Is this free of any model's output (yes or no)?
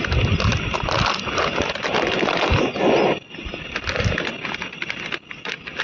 yes